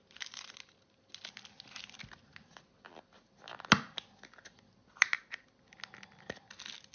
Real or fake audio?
real